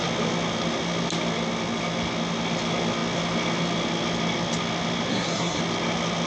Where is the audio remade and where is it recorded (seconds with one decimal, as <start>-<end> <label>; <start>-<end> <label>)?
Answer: 0.0-5.1 recorded; 5.1-5.6 remade; 5.6-6.3 recorded